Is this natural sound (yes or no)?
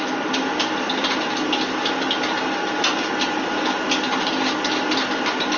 yes